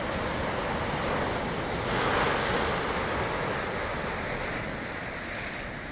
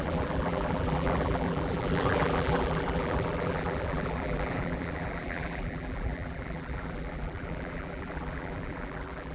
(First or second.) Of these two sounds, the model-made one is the second